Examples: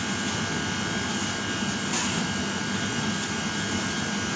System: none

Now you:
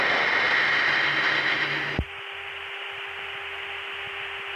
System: none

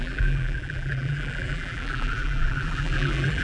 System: vocoder, BigVGAN v2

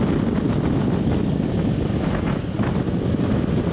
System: none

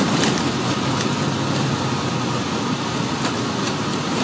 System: none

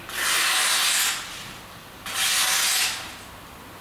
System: none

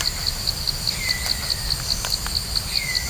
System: none